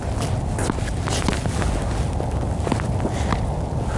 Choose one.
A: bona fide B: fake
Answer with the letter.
A